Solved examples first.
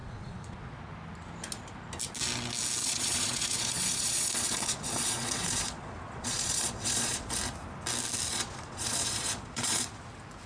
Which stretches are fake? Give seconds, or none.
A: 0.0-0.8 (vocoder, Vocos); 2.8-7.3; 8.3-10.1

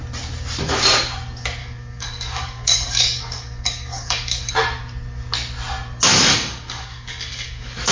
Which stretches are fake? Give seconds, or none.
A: 1.6-4.5 (codec, DAC); 6.1-7.9